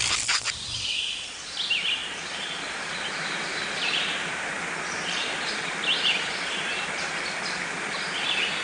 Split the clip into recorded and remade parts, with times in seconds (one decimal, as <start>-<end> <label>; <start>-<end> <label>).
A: 0.0-2.0 remade; 2.0-2.6 recorded; 2.6-8.6 remade